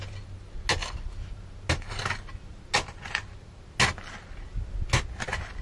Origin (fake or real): real